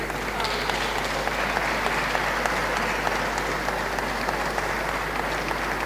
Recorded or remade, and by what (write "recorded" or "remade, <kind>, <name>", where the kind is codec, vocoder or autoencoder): recorded